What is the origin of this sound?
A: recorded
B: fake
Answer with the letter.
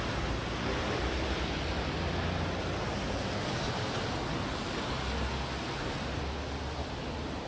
A